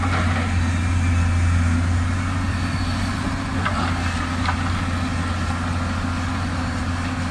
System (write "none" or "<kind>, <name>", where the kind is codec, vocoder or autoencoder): none